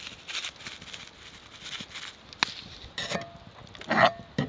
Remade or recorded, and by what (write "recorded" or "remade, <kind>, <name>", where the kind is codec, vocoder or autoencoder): recorded